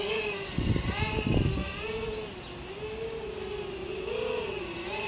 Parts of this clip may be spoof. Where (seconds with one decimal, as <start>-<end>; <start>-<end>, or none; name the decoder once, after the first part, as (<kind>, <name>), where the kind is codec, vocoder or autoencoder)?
none